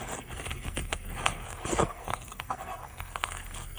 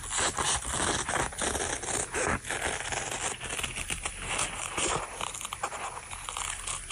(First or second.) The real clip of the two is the second